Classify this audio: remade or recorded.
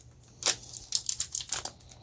recorded